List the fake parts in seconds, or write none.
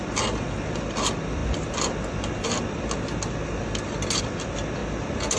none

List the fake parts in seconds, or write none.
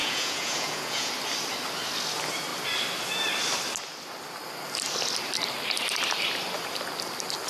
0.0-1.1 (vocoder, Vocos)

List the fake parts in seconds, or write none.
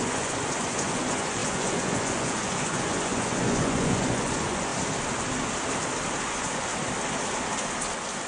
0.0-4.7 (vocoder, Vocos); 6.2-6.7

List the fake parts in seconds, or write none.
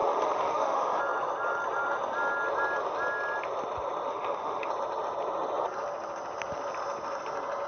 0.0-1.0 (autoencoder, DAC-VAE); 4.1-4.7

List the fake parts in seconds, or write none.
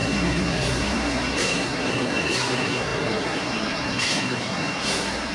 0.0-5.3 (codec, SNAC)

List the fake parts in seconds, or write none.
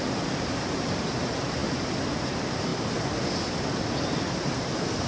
0.0-1.6 (vocoder, BigVGAN v2); 2.2-2.7; 3.5-5.1